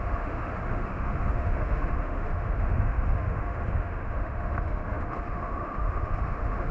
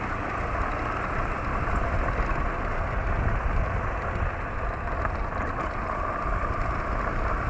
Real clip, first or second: second